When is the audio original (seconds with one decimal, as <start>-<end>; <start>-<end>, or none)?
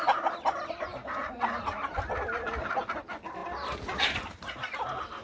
0.0-5.2